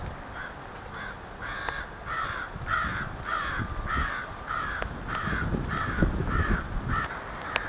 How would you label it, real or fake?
real